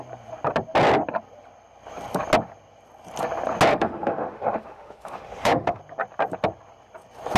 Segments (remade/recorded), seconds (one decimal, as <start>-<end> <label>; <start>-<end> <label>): 0.0-3.7 recorded; 3.7-5.8 remade; 5.8-7.4 recorded